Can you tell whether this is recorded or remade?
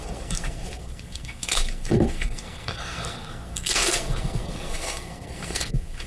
remade